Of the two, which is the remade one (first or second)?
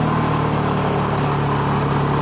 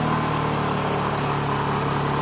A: first